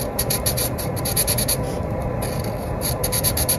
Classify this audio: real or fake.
fake